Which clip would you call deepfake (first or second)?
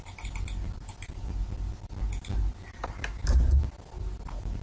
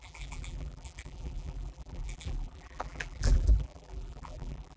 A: second